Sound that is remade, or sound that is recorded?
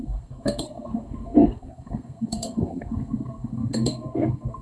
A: remade